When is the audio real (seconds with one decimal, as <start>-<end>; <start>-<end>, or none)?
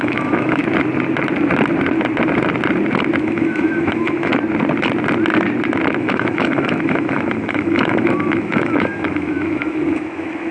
0.6-3.2; 4.3-6.0